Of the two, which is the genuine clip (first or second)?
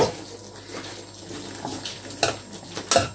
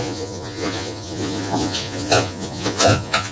first